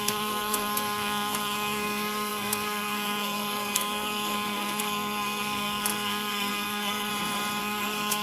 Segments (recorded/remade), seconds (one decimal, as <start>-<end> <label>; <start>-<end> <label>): 0.0-7.1 remade; 7.1-7.6 recorded; 7.6-8.2 remade